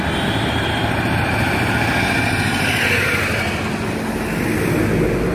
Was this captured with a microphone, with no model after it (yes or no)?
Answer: yes